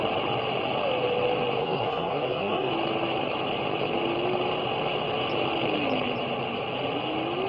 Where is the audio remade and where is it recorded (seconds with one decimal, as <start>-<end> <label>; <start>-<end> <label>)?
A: 0.0-1.6 recorded; 1.6-2.7 remade; 2.7-7.5 recorded